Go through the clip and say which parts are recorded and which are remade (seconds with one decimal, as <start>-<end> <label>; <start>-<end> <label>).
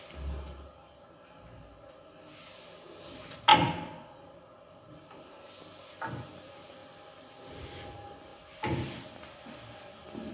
0.0-10.3 recorded